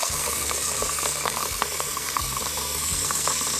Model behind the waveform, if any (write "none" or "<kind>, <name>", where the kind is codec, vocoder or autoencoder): codec, SNAC